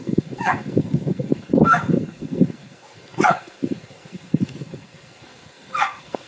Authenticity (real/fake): fake